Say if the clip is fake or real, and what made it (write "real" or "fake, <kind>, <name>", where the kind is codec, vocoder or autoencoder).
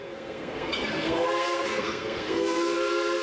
fake, codec, SNAC